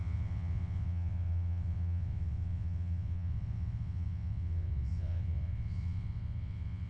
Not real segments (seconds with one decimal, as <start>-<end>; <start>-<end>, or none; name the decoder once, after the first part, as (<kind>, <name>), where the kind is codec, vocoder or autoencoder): 0.0-6.9 (vocoder, WaveNeXt)